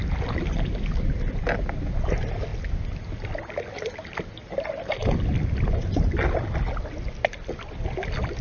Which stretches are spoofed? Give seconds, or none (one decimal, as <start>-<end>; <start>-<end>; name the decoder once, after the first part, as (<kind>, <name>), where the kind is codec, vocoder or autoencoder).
none